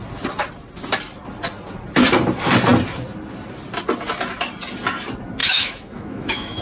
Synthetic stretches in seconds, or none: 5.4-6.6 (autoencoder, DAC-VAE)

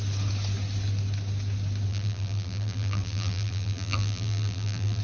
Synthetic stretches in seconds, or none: 1.9-5.0 (vocoder, BigVGAN v2)

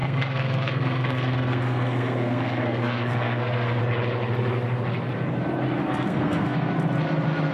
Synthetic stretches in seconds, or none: 0.0-3.8 (codec, SNAC); 5.8-6.7

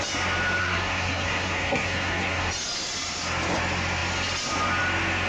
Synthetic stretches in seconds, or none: 0.6-2.5 (codec, SNAC)

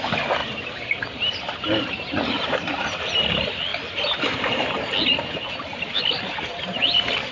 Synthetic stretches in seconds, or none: 0.4-2.7 (vocoder, BigVGAN v2)

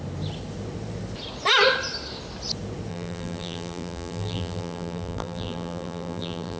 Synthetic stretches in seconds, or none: 2.9-6.6 (vocoder, BigVGAN v2)

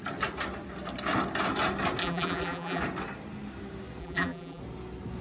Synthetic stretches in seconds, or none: 2.0-2.8 (vocoder, BigVGAN v2); 4.0-4.6